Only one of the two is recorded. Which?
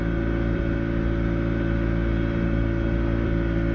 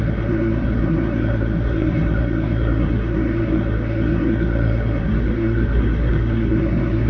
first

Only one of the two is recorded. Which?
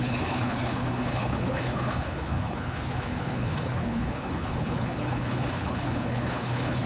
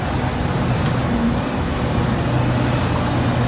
second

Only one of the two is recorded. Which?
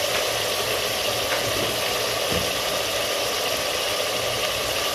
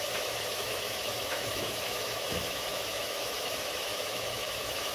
first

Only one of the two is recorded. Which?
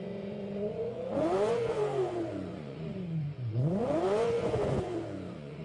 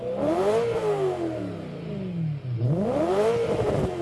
second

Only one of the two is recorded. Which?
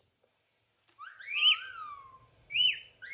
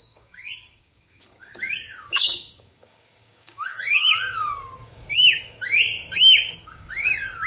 first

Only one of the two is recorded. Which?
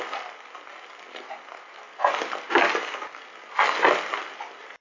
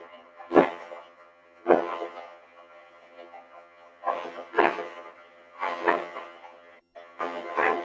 first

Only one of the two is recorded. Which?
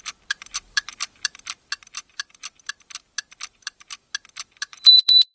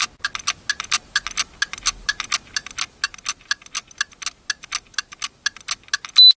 second